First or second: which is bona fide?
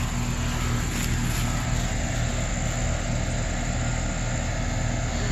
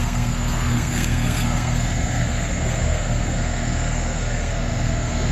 first